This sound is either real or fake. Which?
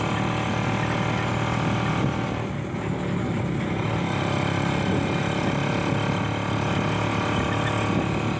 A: real